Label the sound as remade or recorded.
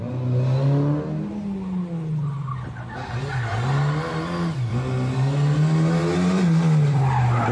recorded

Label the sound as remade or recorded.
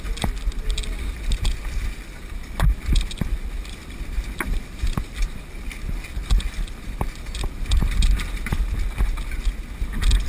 remade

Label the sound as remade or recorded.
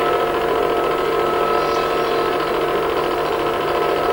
recorded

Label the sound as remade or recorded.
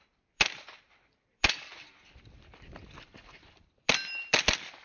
remade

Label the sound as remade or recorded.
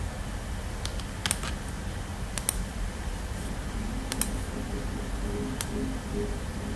recorded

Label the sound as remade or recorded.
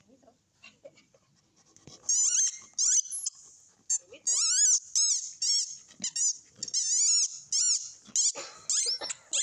recorded